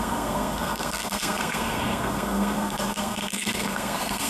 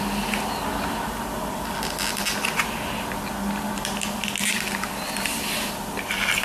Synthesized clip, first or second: first